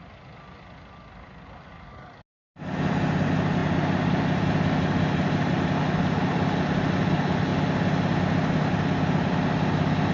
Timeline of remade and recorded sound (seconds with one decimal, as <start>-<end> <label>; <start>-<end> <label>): 0.0-10.1 recorded